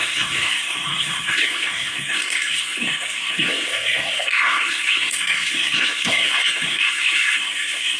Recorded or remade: remade